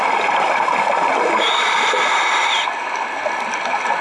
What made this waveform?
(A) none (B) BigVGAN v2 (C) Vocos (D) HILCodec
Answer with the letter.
A